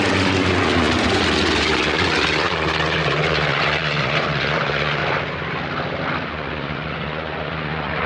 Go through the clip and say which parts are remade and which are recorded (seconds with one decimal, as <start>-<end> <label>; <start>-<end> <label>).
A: 0.0-5.0 remade; 5.0-6.3 recorded; 6.3-8.1 remade